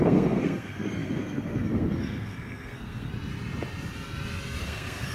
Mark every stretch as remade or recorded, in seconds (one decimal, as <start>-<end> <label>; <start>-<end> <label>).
0.0-3.1 remade; 3.1-4.6 recorded; 4.6-5.1 remade